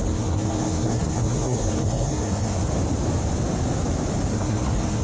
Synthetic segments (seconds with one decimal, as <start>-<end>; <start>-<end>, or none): 0.0-2.7; 4.3-5.0